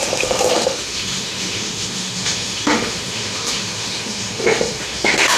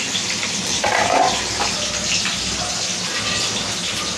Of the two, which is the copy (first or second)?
first